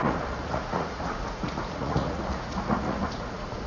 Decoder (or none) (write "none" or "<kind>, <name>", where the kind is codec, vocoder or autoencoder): vocoder, Vocos